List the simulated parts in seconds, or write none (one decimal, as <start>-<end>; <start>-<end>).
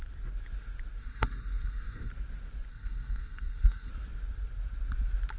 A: 1.0-2.1; 2.7-3.9